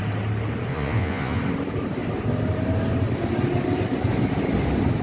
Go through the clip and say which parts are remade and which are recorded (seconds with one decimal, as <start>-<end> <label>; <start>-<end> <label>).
0.0-0.7 recorded; 0.7-1.4 remade; 1.4-5.0 recorded